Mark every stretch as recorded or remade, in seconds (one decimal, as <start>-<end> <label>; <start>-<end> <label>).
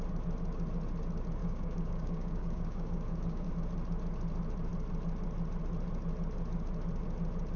0.0-1.4 recorded; 1.4-3.5 remade; 3.5-7.6 recorded